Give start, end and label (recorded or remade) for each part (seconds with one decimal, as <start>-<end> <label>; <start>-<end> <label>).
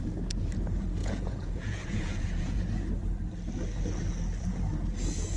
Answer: 0.0-1.0 recorded; 1.0-2.6 remade; 2.6-5.4 recorded